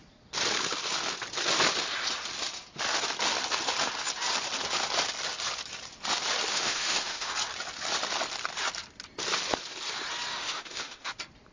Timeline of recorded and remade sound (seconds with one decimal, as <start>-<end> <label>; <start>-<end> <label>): 0.0-6.5 recorded; 6.5-7.3 remade; 7.3-10.3 recorded; 10.3-11.1 remade; 11.1-11.5 recorded